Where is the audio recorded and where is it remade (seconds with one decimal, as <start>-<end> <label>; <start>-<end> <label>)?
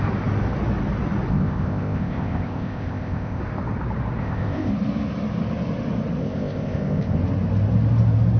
0.0-1.3 recorded; 1.3-3.4 remade; 3.4-4.2 recorded; 4.2-4.7 remade; 4.7-6.2 recorded; 6.2-7.2 remade; 7.2-8.4 recorded